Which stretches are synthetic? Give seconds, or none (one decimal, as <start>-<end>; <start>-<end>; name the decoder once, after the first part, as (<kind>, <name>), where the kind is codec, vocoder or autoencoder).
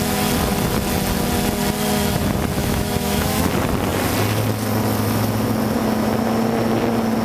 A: 2.6-3.5 (autoencoder, DAC-VAE)